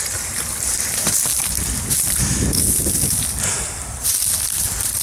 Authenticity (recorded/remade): recorded